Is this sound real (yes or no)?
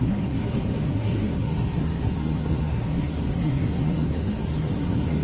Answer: no